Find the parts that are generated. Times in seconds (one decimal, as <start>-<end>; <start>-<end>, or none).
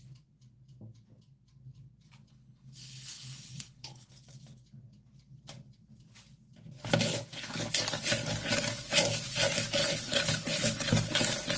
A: 2.3-4.1; 9.8-10.9